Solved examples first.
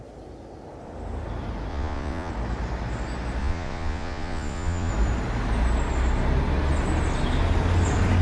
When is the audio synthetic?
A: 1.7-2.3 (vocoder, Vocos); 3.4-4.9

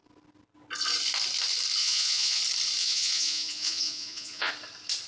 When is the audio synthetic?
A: 1.8-2.4 (vocoder, Vocos); 2.8-4.5

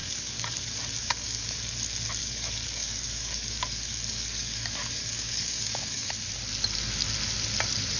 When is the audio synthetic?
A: 0.0-1.6 (codec, DAC); 2.2-6.1

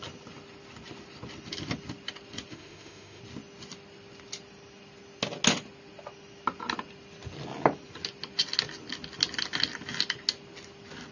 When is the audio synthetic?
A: 2.5-3.2 (autoencoder, DAC-VAE)

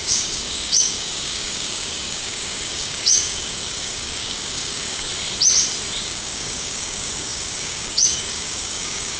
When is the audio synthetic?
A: 0.0-5.1 (codec, DAC); 6.0-9.2

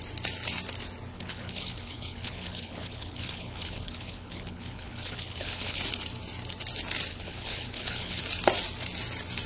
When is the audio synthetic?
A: 1.1-5.8 (codec, HILCodec); 7.1-8.2

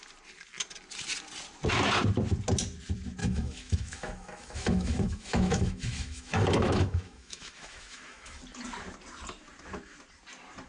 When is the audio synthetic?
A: 3.2-8.4 (autoencoder, DAC-VAE)